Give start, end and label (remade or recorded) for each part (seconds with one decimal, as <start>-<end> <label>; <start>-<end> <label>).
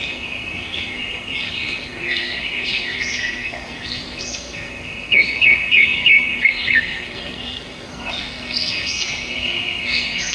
0.0-10.3 remade